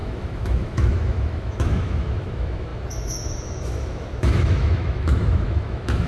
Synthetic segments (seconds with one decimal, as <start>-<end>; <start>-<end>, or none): 0.0-6.1